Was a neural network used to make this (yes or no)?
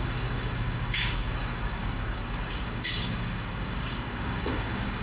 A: yes